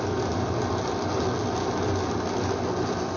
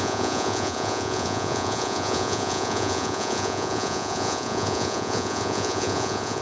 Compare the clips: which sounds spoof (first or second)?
second